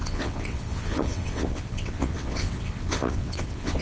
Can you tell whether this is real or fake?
fake